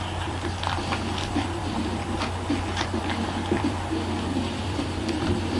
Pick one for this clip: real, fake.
fake